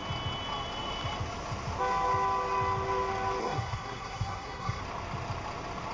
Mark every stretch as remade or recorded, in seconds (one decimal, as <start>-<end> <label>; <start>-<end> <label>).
0.0-3.4 recorded; 3.4-4.8 remade; 4.8-5.9 recorded